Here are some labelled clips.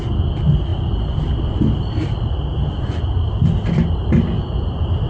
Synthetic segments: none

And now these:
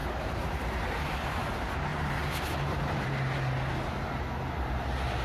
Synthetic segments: 0.0-1.0 (vocoder, BigVGAN v2); 1.9-3.4

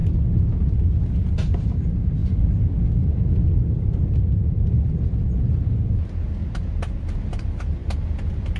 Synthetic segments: 6.4-7.1 (vocoder, BigVGAN v2); 7.8-8.6

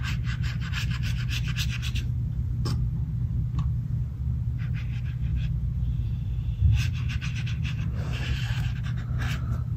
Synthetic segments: 0.6-1.1 (vocoder, BigVGAN v2); 5.3-8.8

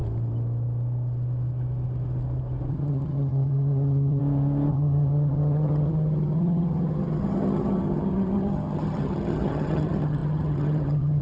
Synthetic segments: 2.7-4.2 (vocoder, HiFi-GAN); 4.7-11.2

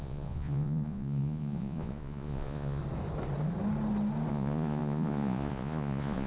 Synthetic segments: 0.0-2.8 (vocoder, Vocos); 4.3-6.3

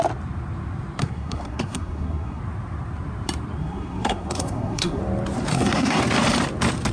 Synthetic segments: 1.0-2.4 (codec, SNAC); 3.6-5.0; 5.5-6.0